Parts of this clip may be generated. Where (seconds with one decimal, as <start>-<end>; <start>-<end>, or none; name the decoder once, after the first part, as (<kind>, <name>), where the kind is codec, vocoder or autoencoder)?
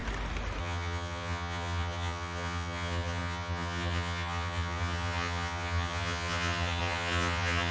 0.6-7.7 (vocoder, HiFi-GAN)